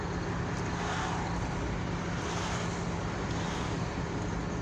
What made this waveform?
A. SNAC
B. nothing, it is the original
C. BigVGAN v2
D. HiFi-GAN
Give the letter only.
B